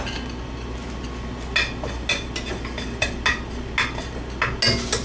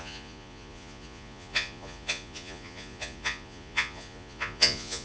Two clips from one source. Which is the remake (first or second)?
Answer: second